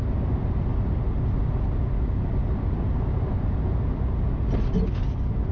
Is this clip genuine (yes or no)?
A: yes